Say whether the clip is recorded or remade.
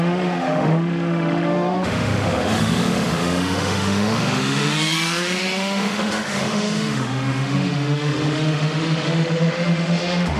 remade